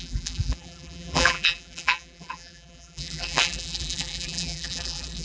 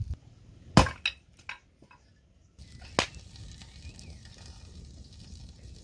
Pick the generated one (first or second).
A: first